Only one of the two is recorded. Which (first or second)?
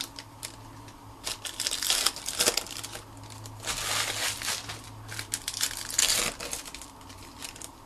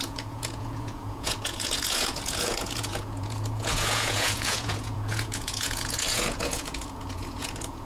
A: first